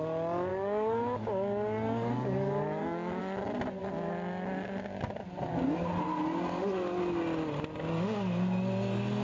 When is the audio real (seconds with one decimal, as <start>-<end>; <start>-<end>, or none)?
0.0-0.5; 3.2-9.2